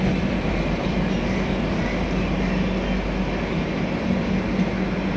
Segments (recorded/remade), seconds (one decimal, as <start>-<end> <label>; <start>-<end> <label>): 0.0-1.8 remade; 1.8-5.2 recorded